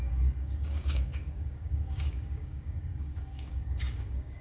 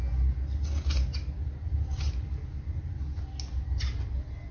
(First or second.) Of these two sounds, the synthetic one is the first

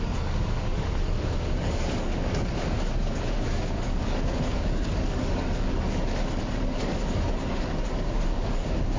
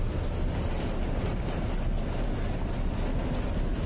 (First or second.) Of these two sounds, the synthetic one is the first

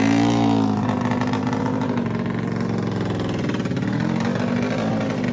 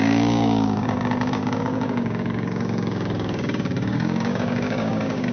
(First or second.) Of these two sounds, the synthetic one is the second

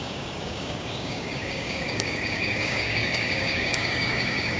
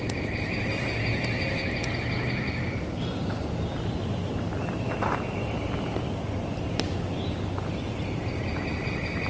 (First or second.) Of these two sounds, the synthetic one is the first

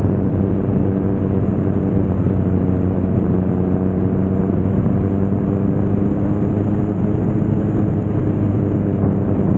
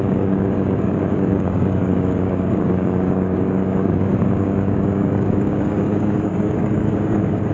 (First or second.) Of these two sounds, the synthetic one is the second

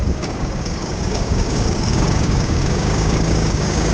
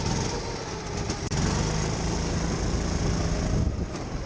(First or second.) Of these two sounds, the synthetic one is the first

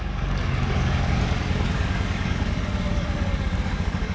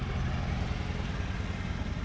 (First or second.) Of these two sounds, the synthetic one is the first